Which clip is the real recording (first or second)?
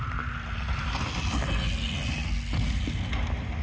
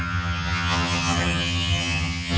first